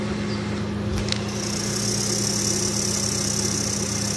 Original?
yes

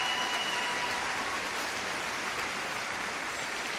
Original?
yes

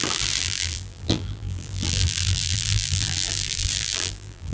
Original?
no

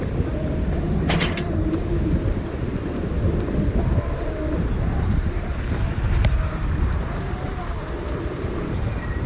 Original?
no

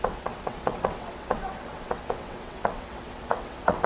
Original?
no